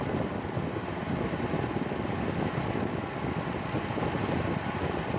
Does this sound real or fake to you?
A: real